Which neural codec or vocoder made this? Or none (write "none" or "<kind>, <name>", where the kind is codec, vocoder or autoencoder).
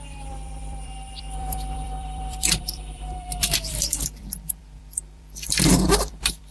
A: vocoder, BigVGAN v2